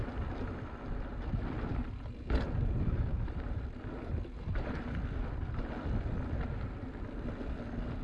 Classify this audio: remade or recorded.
recorded